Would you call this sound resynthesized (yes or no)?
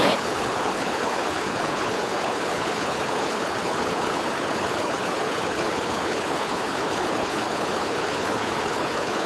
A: yes